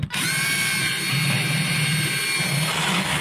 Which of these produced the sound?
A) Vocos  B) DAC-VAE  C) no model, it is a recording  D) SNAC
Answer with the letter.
C